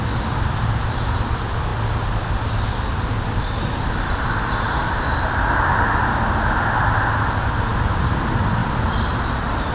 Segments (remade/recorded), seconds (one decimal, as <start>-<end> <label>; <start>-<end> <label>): 0.0-8.6 recorded; 8.6-9.7 remade